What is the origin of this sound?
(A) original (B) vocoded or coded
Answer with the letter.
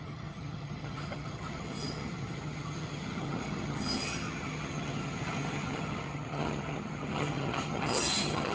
B